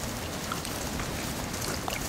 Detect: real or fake real